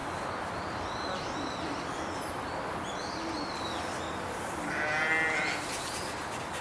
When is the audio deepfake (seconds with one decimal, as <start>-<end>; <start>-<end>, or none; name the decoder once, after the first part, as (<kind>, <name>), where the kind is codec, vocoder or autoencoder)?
none